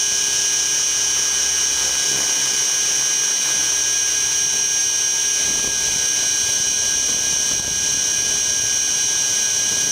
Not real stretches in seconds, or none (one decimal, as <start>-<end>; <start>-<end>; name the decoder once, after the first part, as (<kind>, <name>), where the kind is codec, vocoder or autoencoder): none